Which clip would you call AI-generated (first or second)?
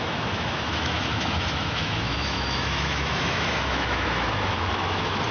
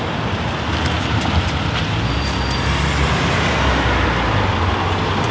first